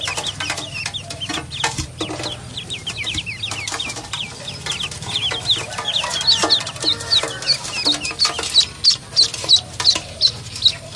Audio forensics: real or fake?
real